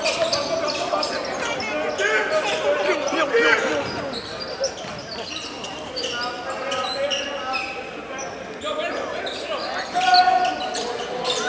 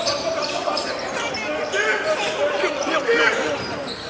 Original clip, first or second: first